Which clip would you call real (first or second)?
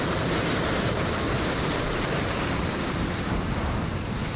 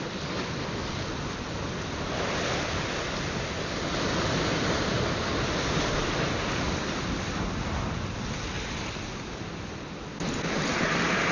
second